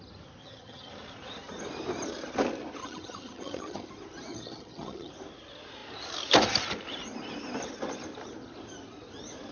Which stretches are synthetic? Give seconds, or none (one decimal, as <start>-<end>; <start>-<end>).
0.4-0.9; 2.8-3.9; 4.3-5.1